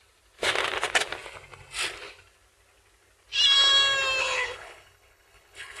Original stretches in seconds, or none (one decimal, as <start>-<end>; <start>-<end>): 0.0-4.2